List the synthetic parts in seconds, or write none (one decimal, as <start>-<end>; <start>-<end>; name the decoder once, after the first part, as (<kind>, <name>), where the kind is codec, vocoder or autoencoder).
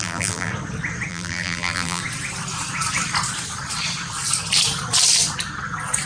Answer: 0.0-0.5 (vocoder, BigVGAN v2); 1.1-2.0